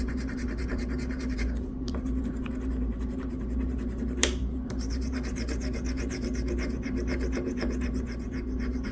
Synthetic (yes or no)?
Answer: yes